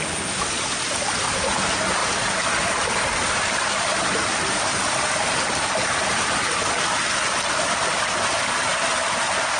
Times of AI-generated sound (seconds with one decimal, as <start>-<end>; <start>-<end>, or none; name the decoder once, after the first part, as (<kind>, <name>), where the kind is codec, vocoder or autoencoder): 4.7-5.6 (vocoder, BigVGAN v2)